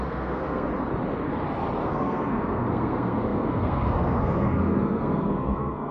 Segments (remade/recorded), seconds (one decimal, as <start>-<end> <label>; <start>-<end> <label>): 0.0-0.7 remade; 0.7-1.8 recorded; 1.8-5.9 remade